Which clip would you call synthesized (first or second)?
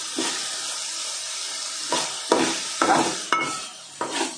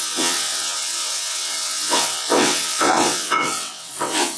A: second